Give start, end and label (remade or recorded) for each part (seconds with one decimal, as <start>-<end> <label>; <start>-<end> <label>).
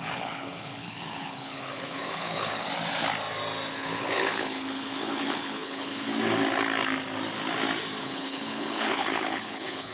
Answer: 0.0-2.7 remade; 2.7-3.7 recorded; 3.7-6.1 remade; 6.1-8.0 recorded; 8.0-9.9 remade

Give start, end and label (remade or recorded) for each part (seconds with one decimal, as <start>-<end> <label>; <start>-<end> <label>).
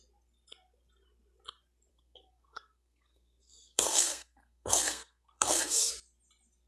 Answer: 0.0-1.9 recorded; 1.9-5.9 remade; 5.9-6.7 recorded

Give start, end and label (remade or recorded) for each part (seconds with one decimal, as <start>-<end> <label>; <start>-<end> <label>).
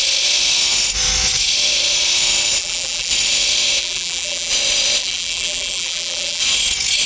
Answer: 0.0-2.6 recorded; 2.6-3.1 remade; 3.1-3.8 recorded; 3.8-4.5 remade; 4.5-5.0 recorded; 5.0-6.4 remade; 6.4-7.1 recorded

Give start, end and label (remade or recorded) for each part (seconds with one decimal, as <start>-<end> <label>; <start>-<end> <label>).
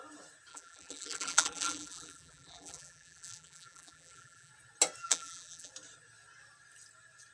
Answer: 0.0-0.5 recorded; 0.5-4.5 remade; 4.5-5.0 recorded; 5.0-5.7 remade; 5.7-7.3 recorded